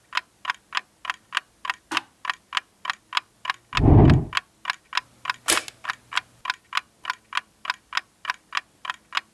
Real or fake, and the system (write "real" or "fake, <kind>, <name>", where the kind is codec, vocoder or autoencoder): real